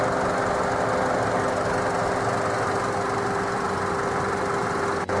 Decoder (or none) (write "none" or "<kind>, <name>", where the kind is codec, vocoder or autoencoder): none